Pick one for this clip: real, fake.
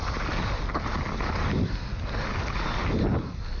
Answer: real